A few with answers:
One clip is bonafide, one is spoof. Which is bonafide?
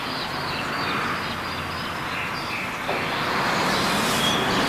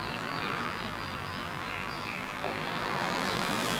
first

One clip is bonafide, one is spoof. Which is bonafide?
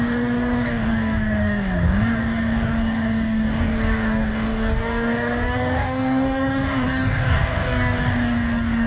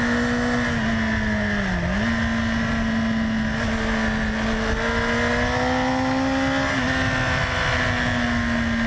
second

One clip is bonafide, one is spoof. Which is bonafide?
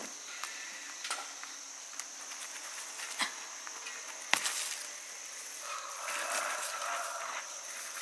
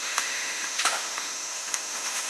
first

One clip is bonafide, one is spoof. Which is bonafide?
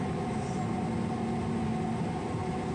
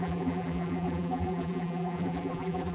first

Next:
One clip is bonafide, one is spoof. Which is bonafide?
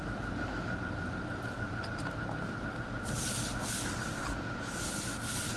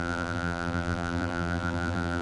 first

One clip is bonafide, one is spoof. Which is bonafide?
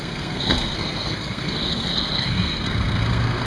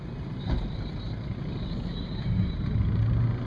second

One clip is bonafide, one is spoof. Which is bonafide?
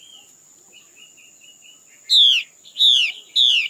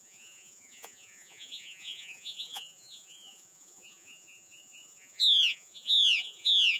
first